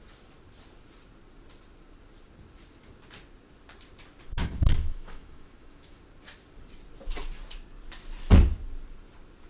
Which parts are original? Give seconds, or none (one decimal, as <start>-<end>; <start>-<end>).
0.0-4.4; 6.0-9.5